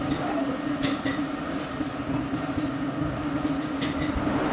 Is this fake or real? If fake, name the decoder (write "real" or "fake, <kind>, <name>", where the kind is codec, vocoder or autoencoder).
real